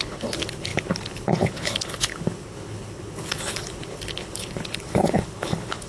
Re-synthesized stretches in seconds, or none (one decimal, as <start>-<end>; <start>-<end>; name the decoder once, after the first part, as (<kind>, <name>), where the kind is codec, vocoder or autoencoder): 0.0-5.9 (codec, HILCodec)